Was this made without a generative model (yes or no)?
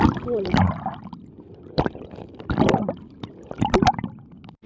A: no